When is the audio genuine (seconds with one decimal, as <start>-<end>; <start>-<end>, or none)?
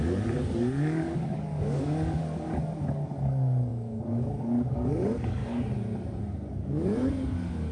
5.4-6.5